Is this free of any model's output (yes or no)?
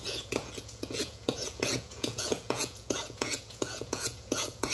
no